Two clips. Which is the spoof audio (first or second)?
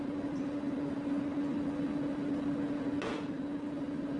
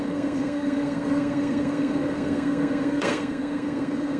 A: second